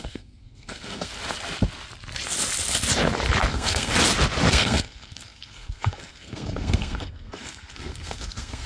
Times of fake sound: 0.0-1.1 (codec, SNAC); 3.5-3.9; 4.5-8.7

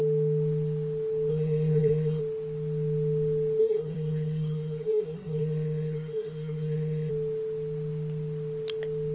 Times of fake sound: 1.3-2.2 (codec, SNAC); 3.6-7.1

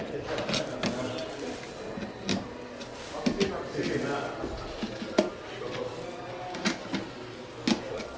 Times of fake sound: none